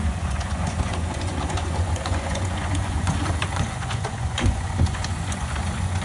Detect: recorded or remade remade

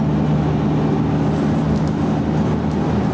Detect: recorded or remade recorded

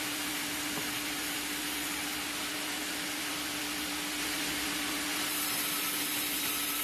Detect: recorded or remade recorded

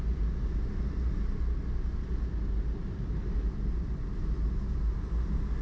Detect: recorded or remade recorded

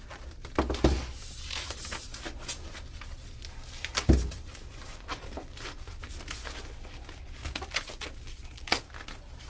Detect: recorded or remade recorded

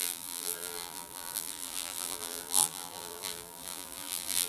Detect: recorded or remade remade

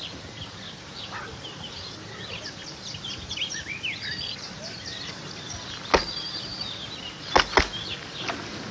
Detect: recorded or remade recorded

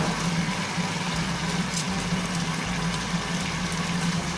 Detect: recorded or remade recorded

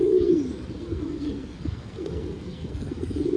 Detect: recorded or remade remade